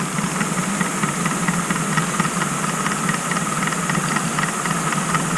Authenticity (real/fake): real